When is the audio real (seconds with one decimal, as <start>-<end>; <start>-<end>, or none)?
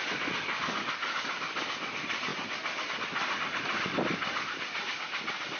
0.0-5.6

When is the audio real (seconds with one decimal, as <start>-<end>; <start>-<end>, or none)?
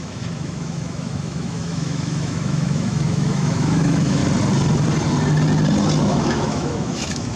4.2-6.0